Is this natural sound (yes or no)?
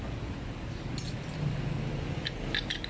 yes